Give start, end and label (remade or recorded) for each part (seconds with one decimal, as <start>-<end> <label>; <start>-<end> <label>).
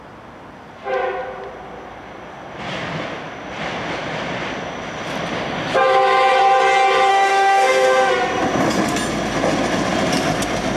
0.0-7.1 recorded; 7.1-8.1 remade; 8.1-10.8 recorded